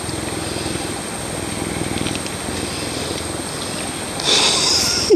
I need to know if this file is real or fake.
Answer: real